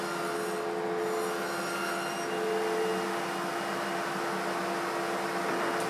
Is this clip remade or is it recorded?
recorded